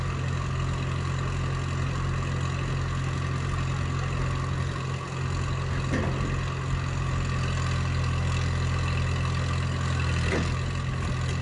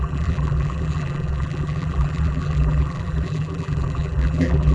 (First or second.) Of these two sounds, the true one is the first